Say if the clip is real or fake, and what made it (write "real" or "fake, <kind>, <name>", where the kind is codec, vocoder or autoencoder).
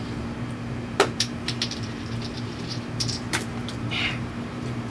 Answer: fake, vocoder, BigVGAN v2